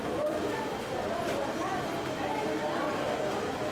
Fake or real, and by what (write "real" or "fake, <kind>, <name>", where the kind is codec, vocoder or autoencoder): real